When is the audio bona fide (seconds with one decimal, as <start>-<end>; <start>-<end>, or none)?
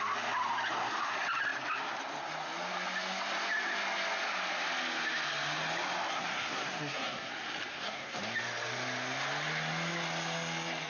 0.0-6.1; 7.3-7.7; 8.2-10.9